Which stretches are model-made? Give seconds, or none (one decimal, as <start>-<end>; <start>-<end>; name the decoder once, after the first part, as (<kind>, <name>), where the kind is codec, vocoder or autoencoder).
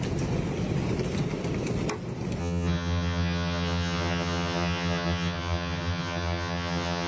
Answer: 2.4-7.1 (vocoder, HiFi-GAN)